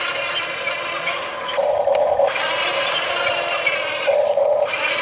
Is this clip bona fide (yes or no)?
yes